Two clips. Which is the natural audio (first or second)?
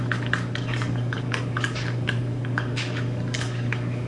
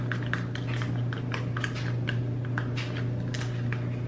second